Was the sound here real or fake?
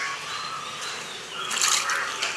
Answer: fake